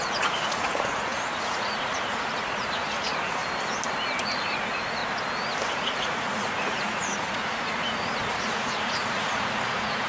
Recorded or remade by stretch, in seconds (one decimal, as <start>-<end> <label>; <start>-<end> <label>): 0.0-3.4 remade; 3.4-4.2 recorded; 4.2-5.0 remade; 5.0-5.7 recorded; 5.7-10.1 remade